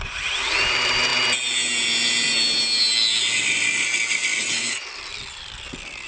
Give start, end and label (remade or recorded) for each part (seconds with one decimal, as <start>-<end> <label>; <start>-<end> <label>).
0.0-1.1 remade; 1.1-4.4 recorded; 4.4-6.1 remade